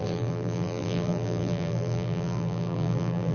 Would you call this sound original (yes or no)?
no